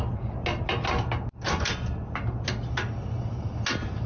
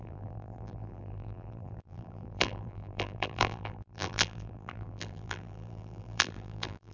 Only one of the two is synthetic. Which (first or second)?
second